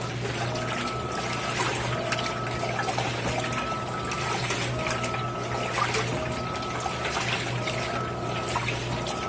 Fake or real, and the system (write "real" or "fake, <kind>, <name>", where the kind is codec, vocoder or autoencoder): real